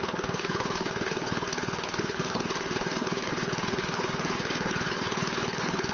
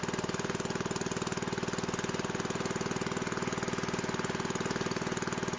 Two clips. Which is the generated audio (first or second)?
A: first